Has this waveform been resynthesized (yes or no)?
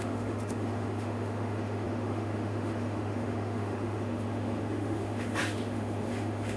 yes